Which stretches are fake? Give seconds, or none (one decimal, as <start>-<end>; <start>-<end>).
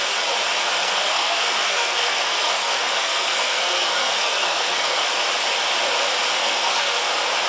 0.8-5.1; 6.4-7.0